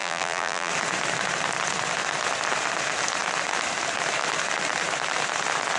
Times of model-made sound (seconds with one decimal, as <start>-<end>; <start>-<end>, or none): 0.0-0.7